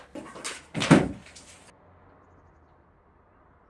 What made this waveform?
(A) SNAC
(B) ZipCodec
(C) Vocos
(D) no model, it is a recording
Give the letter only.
D